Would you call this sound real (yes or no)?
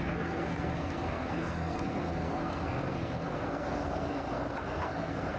no